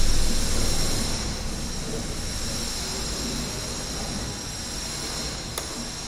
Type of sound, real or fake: real